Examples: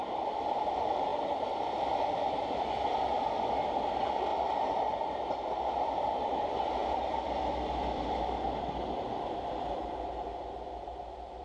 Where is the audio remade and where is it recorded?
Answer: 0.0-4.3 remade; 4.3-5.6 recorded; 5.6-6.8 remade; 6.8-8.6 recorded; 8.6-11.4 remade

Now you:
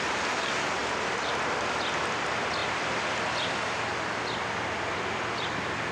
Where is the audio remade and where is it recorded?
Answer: 0.0-5.9 recorded